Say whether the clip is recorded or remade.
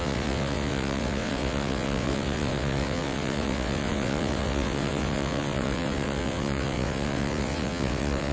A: remade